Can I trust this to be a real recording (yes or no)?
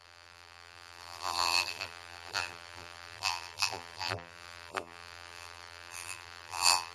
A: no